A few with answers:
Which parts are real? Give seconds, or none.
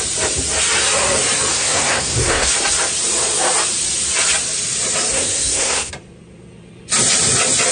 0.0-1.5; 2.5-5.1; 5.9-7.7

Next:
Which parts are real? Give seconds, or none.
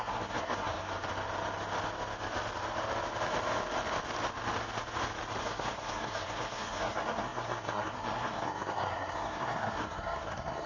0.9-5.4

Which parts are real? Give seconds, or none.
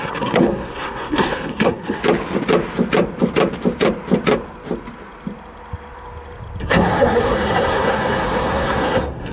2.0-6.6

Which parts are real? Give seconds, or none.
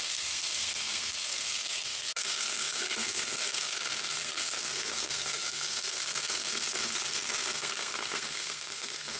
none